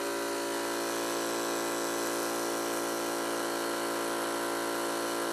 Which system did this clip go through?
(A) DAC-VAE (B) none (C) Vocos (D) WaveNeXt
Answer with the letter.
B